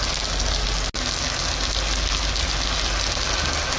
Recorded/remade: recorded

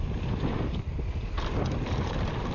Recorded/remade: recorded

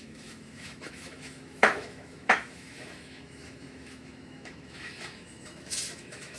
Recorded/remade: remade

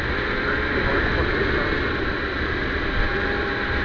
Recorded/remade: recorded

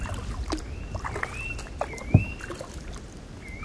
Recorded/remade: recorded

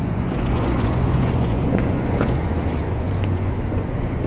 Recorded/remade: remade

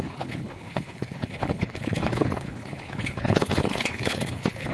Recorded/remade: remade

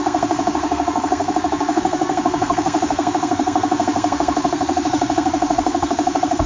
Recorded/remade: remade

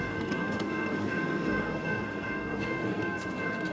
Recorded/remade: remade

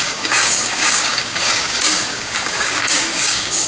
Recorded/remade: remade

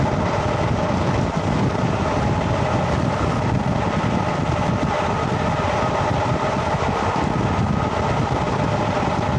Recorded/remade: recorded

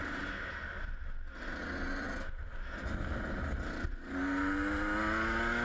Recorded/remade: recorded